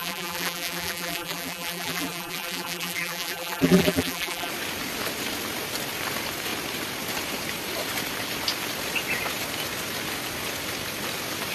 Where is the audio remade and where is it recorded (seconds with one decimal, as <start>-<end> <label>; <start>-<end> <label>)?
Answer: 0.0-4.5 remade; 4.5-11.5 recorded